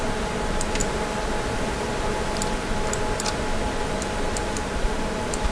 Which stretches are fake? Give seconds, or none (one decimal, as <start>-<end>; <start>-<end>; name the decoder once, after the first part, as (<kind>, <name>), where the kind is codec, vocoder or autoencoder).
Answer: 0.8-2.5 (vocoder, BigVGAN v2); 4.6-5.5